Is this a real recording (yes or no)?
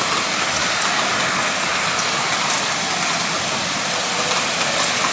yes